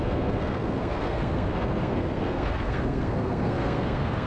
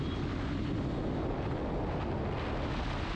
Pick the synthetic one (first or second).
first